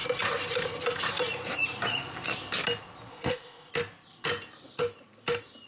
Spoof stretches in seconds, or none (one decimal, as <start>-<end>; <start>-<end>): 3.1-3.7